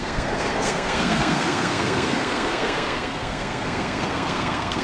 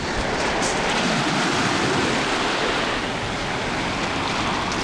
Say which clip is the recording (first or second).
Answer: second